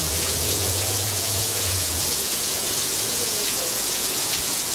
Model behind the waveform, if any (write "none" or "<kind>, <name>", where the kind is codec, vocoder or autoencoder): vocoder, Vocos